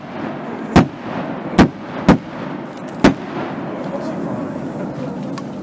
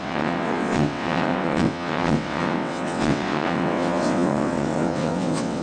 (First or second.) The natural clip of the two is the first